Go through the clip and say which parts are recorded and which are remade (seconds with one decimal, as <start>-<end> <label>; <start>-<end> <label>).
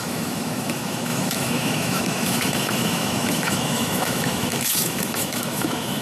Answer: 0.0-6.0 remade